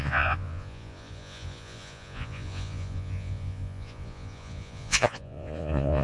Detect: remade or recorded remade